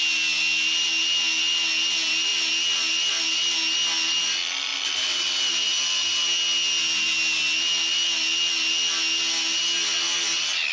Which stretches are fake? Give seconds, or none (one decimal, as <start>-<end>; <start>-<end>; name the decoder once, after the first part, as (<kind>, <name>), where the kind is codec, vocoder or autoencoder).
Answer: 4.7-5.5 (vocoder, BigVGAN v2)